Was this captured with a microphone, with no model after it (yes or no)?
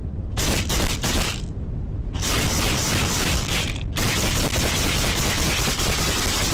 yes